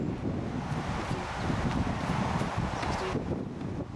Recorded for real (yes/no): yes